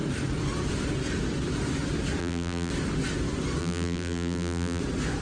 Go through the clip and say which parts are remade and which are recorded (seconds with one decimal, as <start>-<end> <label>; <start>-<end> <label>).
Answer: 0.0-2.2 recorded; 2.2-2.7 remade; 2.7-3.6 recorded; 3.6-4.8 remade; 4.8-5.2 recorded